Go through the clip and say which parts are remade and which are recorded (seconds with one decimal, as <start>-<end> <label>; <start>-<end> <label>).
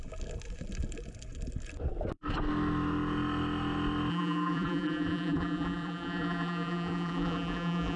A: 0.0-4.1 recorded; 4.1-8.0 remade